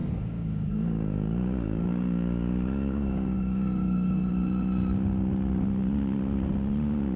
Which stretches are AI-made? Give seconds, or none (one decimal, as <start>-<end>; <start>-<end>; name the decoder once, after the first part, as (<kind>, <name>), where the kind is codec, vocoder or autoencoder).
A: 0.0-4.3 (codec, DAC)

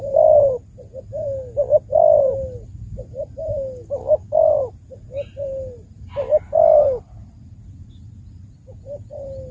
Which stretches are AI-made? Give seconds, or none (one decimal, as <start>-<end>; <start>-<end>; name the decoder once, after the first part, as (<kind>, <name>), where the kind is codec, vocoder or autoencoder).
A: 4.0-4.5 (codec, DAC)